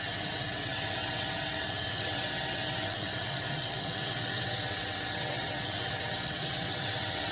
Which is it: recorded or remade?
remade